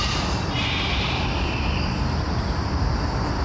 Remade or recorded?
recorded